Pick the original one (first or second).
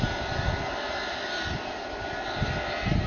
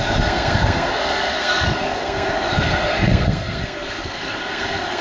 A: first